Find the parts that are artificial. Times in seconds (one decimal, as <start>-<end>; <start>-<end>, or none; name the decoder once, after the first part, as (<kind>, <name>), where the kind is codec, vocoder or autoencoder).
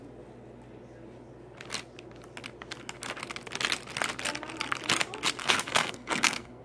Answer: 5.4-6.6 (codec, SNAC)